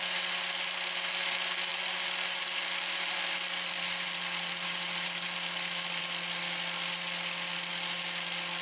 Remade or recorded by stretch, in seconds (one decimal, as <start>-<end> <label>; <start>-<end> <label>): 0.0-1.7 recorded; 1.7-6.0 remade; 6.0-8.6 recorded